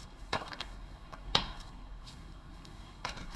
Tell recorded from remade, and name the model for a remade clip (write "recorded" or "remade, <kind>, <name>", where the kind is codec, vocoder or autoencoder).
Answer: remade, codec, SNAC